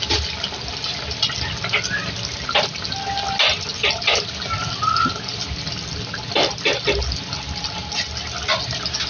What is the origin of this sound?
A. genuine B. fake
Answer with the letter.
A